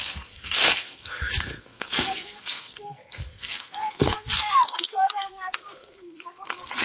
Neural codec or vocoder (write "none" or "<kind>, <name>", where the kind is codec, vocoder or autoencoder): codec, SNAC